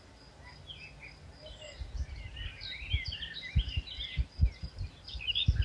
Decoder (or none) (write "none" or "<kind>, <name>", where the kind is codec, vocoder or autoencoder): none